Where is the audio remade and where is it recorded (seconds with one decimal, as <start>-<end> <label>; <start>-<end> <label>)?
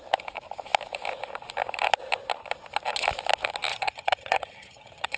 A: 0.0-3.7 recorded; 3.7-5.2 remade